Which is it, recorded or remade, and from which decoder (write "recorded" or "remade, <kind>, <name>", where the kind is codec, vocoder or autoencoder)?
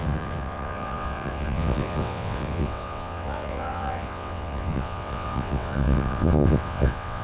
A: remade, vocoder, WaveNeXt